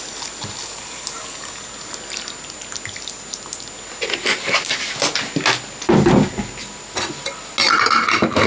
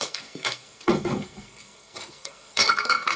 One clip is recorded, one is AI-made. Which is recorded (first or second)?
first